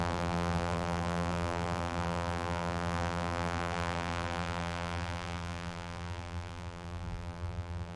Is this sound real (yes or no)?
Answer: no